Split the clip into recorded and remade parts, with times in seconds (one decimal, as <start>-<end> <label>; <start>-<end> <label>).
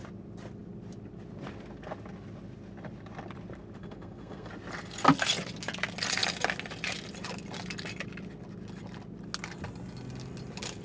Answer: 0.0-3.8 recorded; 3.8-4.5 remade; 4.5-10.8 recorded